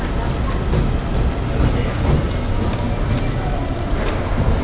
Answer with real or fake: real